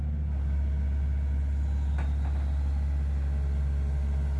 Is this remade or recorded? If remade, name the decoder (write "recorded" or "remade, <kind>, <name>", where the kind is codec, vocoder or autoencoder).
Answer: recorded